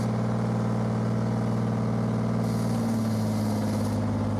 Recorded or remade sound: recorded